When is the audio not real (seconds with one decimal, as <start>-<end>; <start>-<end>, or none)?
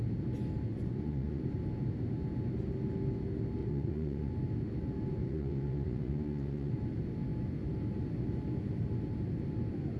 0.7-1.4; 3.6-4.3; 5.2-6.7